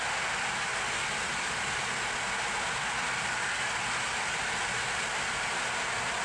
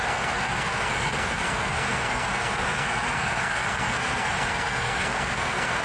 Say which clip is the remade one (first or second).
second